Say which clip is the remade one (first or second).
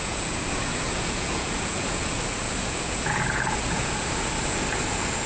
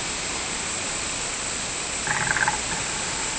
first